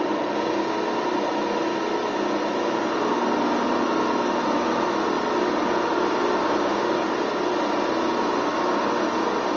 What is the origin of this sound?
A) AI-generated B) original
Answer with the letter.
B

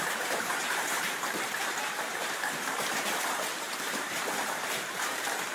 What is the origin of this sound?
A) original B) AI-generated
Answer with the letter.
B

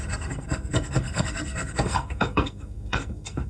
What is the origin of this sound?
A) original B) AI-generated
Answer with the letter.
B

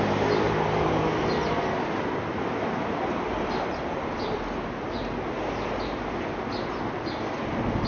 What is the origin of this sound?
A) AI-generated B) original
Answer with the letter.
B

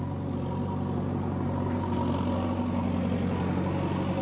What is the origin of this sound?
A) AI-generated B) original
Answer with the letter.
B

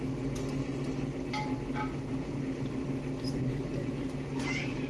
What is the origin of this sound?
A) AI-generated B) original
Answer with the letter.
B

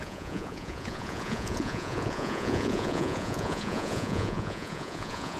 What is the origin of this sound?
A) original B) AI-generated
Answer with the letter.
B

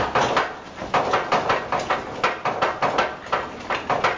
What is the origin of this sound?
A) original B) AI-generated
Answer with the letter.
A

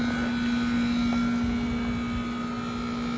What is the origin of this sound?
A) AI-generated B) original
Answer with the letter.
B